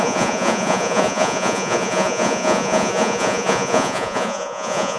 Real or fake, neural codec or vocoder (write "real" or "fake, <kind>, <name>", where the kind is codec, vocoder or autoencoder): fake, vocoder, Vocos